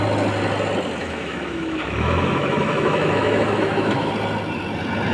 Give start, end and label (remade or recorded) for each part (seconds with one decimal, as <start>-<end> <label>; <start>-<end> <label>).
0.0-1.0 recorded; 1.0-4.1 remade; 4.1-5.1 recorded